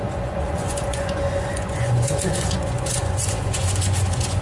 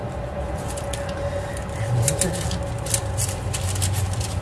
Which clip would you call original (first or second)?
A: second